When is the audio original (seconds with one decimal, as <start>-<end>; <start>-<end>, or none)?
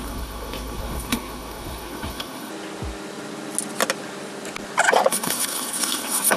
2.5-5.1